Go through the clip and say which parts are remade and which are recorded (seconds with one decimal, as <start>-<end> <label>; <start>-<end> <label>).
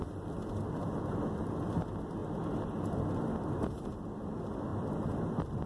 0.0-4.7 recorded; 4.7-5.7 remade